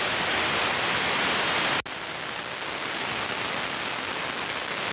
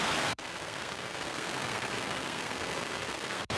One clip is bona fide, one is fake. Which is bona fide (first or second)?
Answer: first